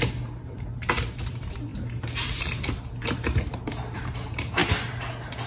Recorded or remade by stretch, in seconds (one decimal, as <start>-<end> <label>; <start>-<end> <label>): 0.0-4.6 remade; 4.6-5.5 recorded